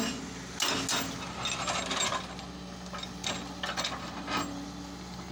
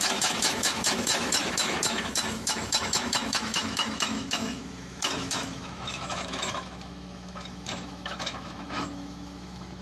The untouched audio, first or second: first